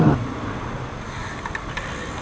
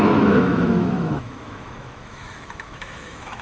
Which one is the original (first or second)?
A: first